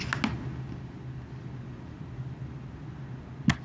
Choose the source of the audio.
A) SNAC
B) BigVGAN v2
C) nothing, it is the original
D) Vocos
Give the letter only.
C